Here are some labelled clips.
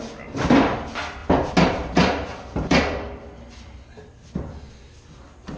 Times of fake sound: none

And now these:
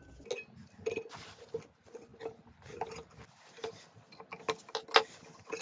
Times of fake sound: none

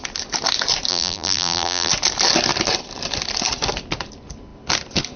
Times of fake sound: 0.9-1.9 (vocoder, BigVGAN v2)

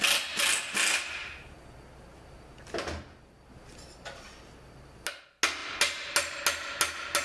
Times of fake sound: none

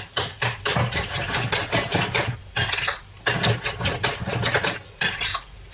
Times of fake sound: 0.0-2.4 (vocoder, BigVGAN v2); 4.9-5.7

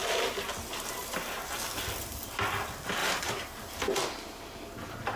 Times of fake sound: 1.0-1.5 (vocoder, BigVGAN v2); 3.0-4.0

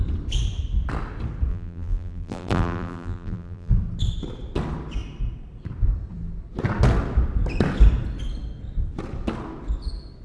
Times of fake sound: 1.5-3.7 (vocoder, BigVGAN v2)